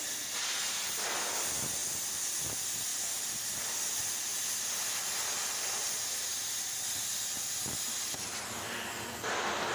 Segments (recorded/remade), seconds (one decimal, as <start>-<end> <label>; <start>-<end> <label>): 0.0-9.7 recorded